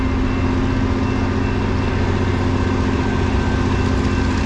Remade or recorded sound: recorded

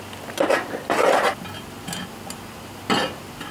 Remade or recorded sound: recorded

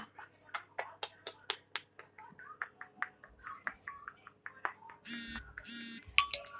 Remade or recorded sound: recorded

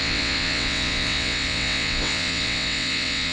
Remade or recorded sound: remade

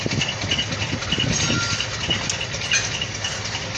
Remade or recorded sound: recorded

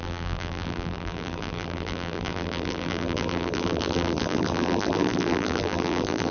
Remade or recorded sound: remade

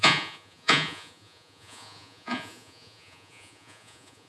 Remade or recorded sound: remade